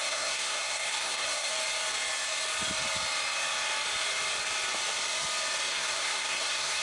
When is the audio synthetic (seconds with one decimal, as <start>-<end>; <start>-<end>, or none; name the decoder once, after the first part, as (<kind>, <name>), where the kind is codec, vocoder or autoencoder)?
0.0-1.5 (codec, SNAC); 5.7-6.8